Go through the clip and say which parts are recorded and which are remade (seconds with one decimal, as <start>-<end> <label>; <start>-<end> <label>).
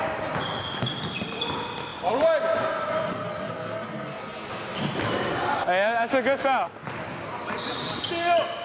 0.0-8.6 recorded